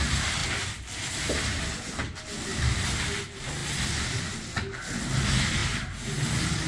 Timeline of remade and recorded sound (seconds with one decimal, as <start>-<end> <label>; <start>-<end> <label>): 0.0-0.4 recorded; 0.4-1.8 remade; 1.8-2.5 recorded; 2.5-3.1 remade; 3.1-6.7 recorded